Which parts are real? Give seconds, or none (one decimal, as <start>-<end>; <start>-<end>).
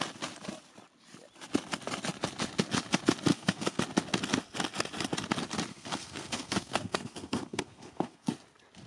0.0-3.3; 3.8-5.7; 8.3-8.9